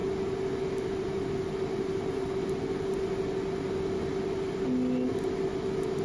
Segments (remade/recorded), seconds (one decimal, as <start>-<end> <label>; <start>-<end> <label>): 0.0-6.0 recorded